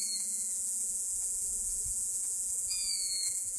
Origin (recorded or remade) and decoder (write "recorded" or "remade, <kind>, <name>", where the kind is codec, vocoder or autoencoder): remade, vocoder, Vocos